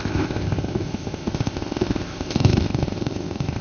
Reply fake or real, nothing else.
fake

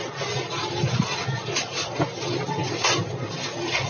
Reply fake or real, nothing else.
real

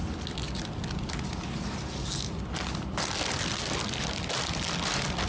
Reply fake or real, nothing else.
real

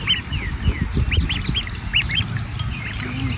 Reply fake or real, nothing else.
real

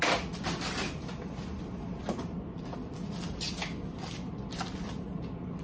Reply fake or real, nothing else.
real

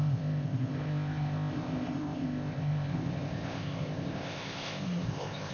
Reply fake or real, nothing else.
fake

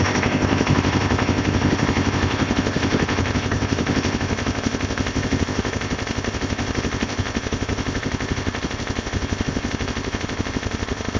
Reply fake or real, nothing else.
fake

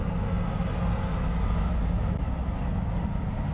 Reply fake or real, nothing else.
real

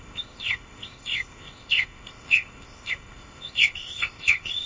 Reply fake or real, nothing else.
fake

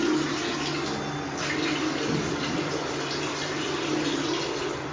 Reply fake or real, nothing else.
real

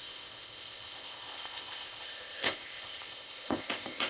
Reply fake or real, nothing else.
fake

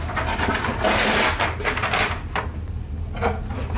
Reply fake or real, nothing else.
real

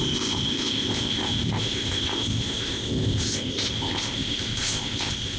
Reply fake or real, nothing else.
fake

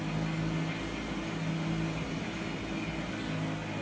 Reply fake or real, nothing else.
real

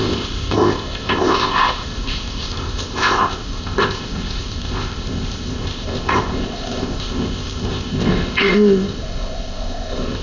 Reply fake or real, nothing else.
fake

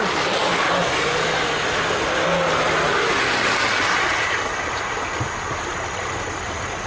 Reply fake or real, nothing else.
real